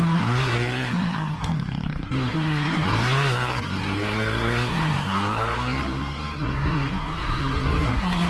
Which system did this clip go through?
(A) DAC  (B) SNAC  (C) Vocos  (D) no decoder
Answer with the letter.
B